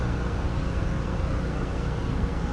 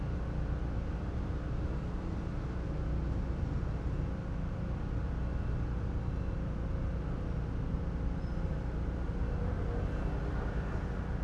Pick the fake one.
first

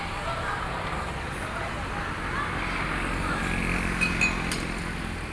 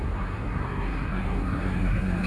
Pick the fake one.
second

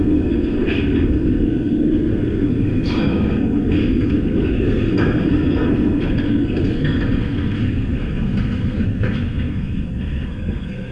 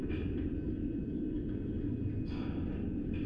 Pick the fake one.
first